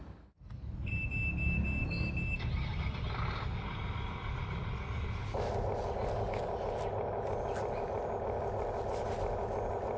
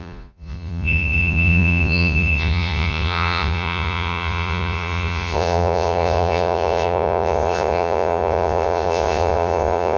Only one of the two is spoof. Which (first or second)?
second